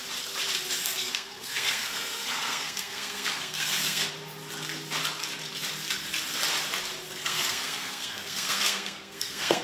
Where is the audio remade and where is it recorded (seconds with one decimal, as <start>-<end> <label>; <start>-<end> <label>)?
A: 0.0-0.8 recorded; 0.8-4.1 remade; 4.1-7.2 recorded; 7.2-9.6 remade